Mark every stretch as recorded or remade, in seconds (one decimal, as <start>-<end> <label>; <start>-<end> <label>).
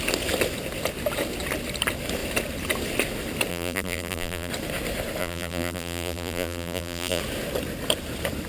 0.0-3.5 recorded; 3.5-4.5 remade; 4.5-5.2 recorded; 5.2-7.2 remade; 7.2-8.5 recorded